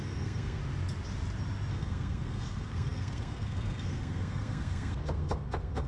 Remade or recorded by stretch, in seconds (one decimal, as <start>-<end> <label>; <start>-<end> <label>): 0.0-0.6 remade; 0.6-1.7 recorded; 1.7-5.9 remade